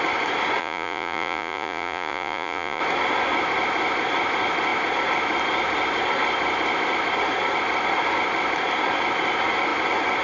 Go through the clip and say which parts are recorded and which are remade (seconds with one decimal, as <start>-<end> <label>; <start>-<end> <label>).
0.0-0.6 recorded; 0.6-2.8 remade; 2.8-10.2 recorded